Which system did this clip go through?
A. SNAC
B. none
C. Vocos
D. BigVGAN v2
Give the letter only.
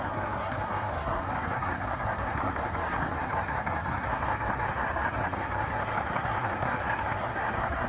A